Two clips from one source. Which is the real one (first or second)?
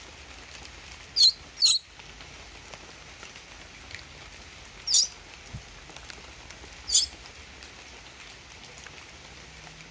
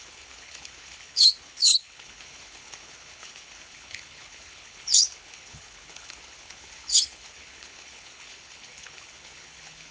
first